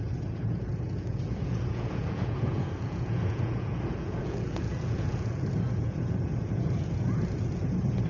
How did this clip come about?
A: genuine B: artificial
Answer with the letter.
B